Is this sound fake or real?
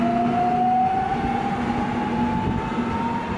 real